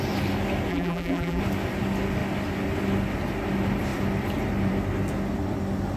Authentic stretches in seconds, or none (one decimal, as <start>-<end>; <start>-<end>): 0.0-0.7; 1.4-6.0